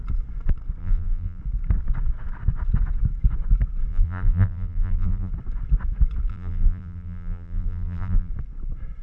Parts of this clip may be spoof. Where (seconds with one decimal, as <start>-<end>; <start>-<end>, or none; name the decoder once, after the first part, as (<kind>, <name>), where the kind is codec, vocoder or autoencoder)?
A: 0.8-1.4 (vocoder, BigVGAN v2); 3.9-5.3; 6.3-8.3